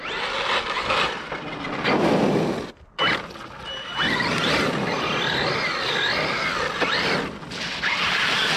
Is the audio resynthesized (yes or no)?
no